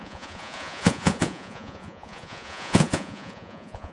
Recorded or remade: remade